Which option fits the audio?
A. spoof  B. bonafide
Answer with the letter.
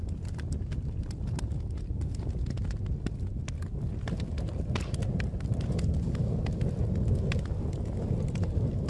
B